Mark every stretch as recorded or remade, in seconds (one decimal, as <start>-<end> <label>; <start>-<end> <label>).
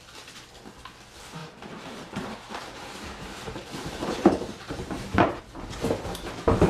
0.0-1.4 recorded; 1.4-5.4 remade; 5.4-6.7 recorded